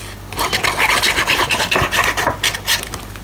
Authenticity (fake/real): real